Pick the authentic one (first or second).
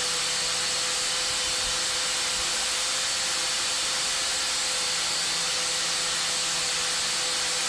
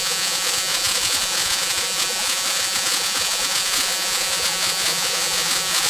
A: first